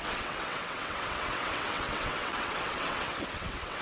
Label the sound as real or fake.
fake